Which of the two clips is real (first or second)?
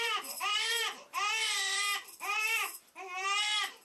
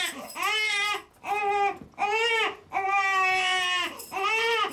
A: second